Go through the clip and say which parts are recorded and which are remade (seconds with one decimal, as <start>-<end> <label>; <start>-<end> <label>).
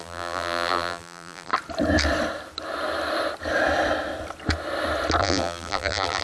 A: 0.0-1.5 remade; 1.5-5.2 recorded; 5.2-6.2 remade